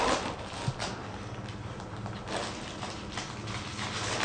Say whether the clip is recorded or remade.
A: recorded